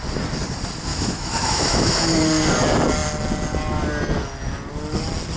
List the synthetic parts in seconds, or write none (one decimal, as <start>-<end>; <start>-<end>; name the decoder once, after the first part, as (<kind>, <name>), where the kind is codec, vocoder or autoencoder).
0.9-2.2 (autoencoder, DAC-VAE)